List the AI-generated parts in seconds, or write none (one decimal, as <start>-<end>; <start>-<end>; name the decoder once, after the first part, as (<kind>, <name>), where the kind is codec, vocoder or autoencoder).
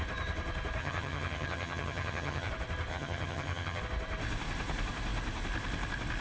0.8-2.5 (vocoder, HiFi-GAN); 2.9-3.8